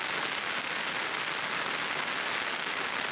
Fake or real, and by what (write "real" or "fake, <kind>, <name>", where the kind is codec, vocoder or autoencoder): real